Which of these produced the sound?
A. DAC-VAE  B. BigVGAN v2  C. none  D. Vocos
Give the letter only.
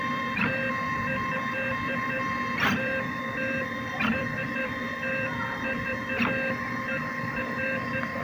B